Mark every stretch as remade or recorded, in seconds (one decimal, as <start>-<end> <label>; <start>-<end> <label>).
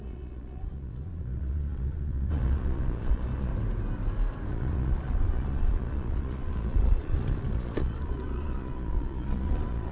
0.0-3.5 remade; 3.5-4.5 recorded; 4.5-9.9 remade